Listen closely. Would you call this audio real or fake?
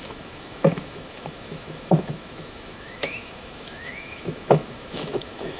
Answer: fake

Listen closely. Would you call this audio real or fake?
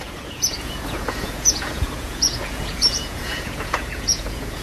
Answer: fake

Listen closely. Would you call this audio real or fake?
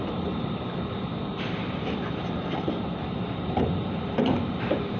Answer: fake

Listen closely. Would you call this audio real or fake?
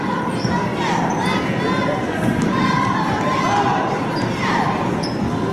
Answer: real